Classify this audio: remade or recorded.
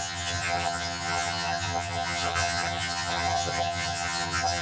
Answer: remade